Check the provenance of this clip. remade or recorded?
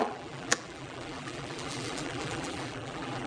remade